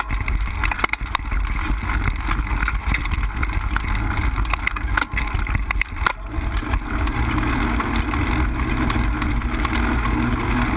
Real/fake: real